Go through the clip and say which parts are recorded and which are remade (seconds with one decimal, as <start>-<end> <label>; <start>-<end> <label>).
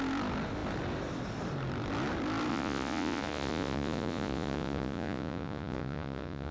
0.0-2.5 recorded; 2.5-6.5 remade